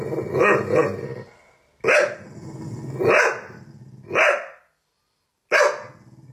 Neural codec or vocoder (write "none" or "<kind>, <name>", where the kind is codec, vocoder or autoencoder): none